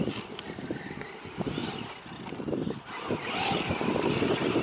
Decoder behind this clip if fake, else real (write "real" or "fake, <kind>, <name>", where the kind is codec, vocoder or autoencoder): real